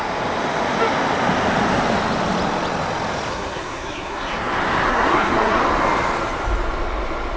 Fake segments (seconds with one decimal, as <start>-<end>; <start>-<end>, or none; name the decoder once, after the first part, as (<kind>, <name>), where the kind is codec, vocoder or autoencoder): 3.3-4.5 (codec, SNAC); 4.9-5.6